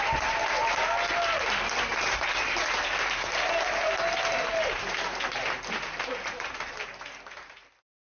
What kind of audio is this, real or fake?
real